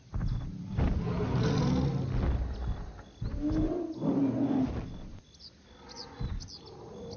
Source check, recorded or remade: recorded